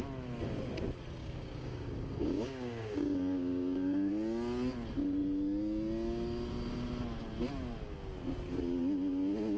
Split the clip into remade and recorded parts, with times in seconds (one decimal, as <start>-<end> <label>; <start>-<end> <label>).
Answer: 0.0-1.2 recorded; 1.2-4.1 remade; 4.1-9.6 recorded